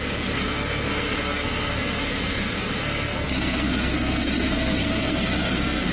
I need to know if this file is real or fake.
fake